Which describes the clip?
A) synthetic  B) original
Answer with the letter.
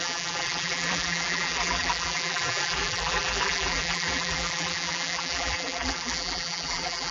A